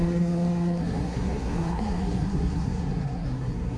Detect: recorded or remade remade